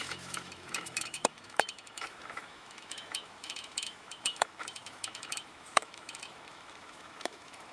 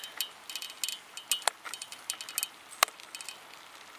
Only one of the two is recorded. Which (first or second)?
second